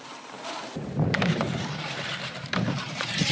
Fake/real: fake